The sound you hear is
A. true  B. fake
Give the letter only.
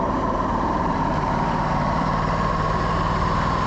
B